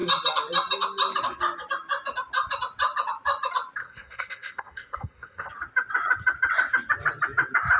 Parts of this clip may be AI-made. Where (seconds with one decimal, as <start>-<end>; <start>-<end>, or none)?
3.8-5.5